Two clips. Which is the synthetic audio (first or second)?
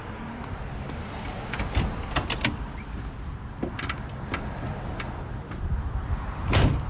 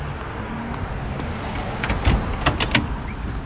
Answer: first